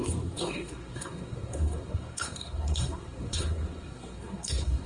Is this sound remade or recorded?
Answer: remade